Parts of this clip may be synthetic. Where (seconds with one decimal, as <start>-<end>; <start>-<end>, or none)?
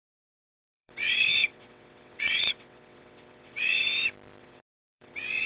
0.0-3.8; 4.4-5.5